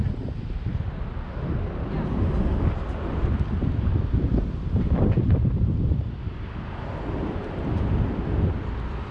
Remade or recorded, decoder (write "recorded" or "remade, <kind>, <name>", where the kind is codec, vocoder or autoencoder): recorded